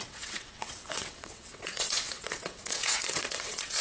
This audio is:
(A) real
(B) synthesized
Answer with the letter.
B